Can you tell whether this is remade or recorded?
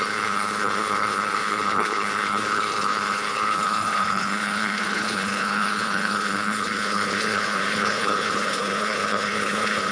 remade